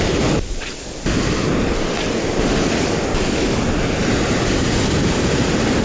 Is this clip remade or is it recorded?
recorded